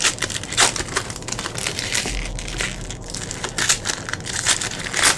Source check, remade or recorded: recorded